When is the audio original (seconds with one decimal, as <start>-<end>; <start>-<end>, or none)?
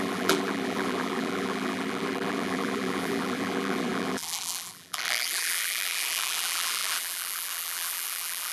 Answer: none